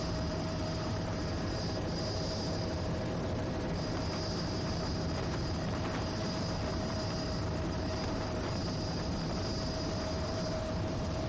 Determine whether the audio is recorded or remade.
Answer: remade